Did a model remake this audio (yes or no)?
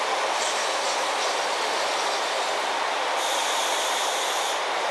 no